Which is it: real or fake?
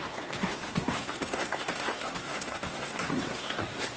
fake